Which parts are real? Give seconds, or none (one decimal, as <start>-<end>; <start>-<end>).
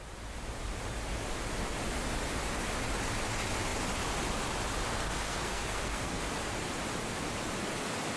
0.0-4.9; 6.2-8.2